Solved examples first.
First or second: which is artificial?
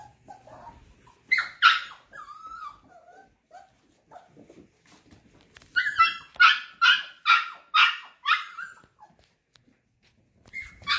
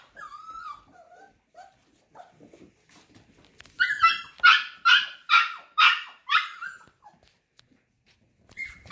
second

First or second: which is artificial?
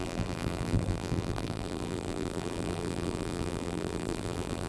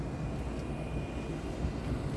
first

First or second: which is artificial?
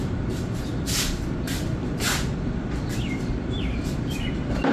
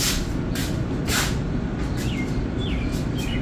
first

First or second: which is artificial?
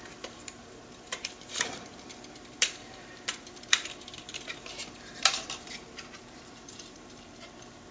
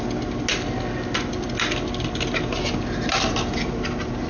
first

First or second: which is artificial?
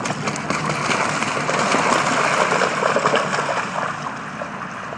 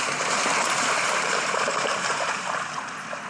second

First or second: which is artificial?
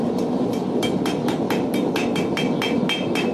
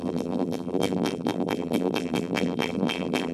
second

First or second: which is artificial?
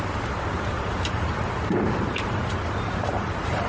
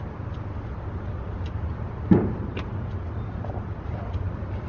first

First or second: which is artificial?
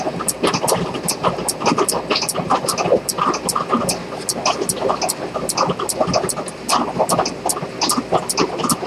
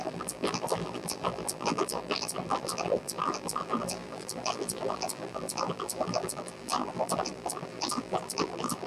second